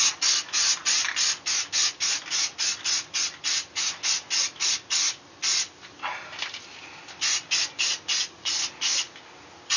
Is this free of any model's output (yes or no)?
yes